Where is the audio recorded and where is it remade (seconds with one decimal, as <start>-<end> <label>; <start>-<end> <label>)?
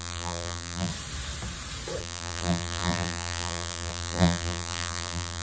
0.0-0.9 remade; 0.9-2.0 recorded; 2.0-5.4 remade